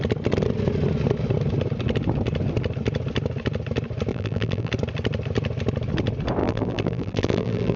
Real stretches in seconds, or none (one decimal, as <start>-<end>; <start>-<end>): 0.0-4.1; 4.7-6.4